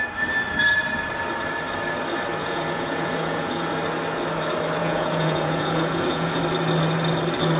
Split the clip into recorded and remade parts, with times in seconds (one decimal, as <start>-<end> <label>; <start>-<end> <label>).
0.0-2.4 recorded; 2.4-3.7 remade; 3.7-4.8 recorded; 4.8-6.4 remade; 6.4-7.6 recorded